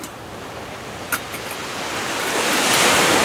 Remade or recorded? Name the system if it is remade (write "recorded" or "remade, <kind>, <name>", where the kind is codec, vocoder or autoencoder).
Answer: recorded